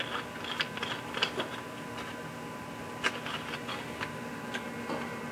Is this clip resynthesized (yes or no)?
no